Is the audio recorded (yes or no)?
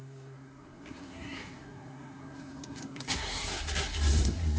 no